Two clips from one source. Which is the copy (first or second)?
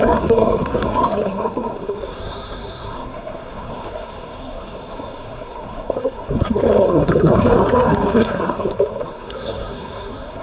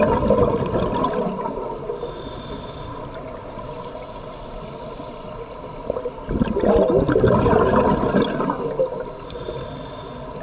first